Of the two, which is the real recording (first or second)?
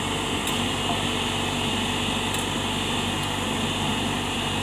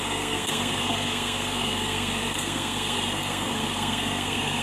first